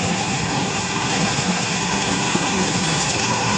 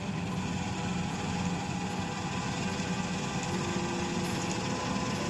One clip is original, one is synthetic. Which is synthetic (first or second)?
first